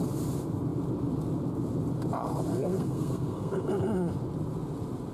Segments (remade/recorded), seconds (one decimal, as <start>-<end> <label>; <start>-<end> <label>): 0.0-2.5 recorded; 2.5-3.7 remade; 3.7-5.1 recorded